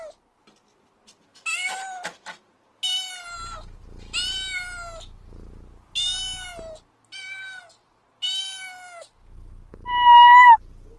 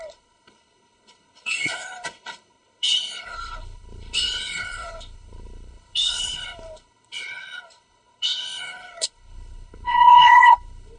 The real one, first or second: first